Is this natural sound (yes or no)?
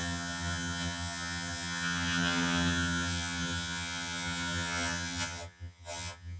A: no